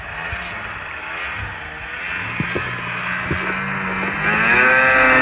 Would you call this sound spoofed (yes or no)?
no